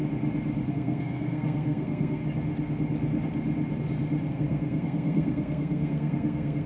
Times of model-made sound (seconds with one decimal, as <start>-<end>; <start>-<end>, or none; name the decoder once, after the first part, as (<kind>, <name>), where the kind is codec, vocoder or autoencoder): 0.7-2.2 (codec, SNAC); 4.3-6.7